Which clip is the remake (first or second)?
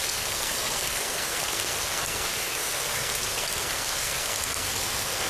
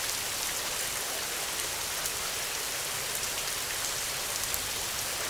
first